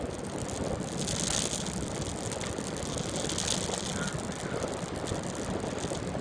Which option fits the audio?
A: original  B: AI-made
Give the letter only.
A